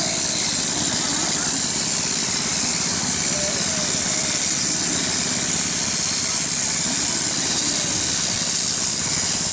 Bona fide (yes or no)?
yes